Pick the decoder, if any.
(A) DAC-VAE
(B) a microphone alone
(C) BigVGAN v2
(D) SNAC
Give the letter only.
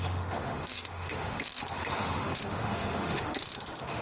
A